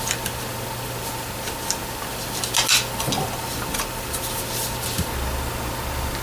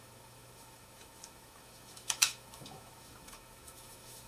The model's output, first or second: second